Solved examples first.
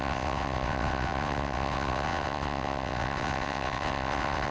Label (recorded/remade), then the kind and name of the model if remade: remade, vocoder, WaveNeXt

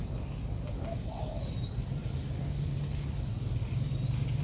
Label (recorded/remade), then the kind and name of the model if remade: recorded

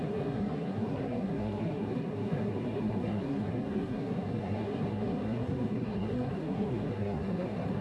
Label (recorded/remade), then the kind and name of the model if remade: remade, codec, SNAC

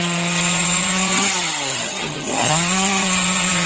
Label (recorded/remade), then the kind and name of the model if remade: remade, vocoder, HiFi-GAN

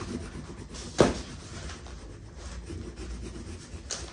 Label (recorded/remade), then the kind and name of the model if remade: recorded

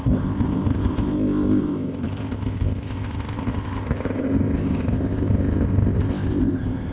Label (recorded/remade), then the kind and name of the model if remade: remade, codec, ZipCodec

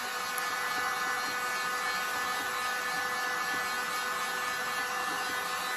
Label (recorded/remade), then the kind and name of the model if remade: recorded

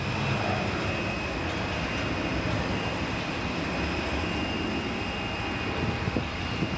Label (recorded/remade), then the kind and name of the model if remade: recorded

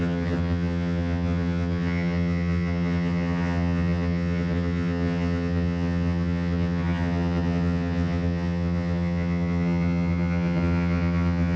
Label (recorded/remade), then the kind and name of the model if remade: remade, vocoder, HiFi-GAN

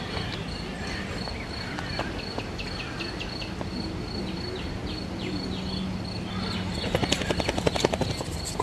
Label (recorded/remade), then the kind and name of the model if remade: recorded